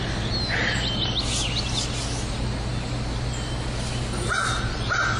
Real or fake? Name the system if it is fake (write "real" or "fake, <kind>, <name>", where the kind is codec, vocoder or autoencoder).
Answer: real